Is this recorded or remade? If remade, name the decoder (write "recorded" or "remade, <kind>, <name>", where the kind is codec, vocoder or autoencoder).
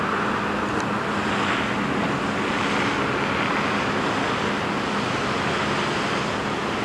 recorded